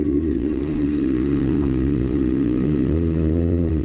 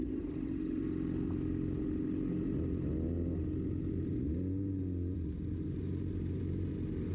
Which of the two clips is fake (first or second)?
first